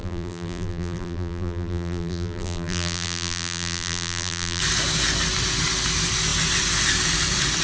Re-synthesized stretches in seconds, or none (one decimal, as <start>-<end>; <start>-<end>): 0.0-4.6